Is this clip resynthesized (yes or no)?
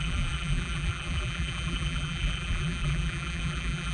yes